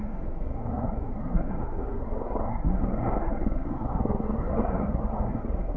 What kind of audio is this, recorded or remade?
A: remade